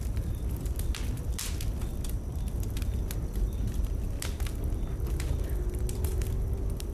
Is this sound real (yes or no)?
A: yes